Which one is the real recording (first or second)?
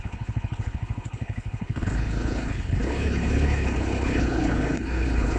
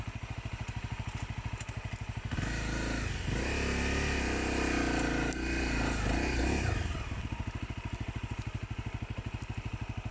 second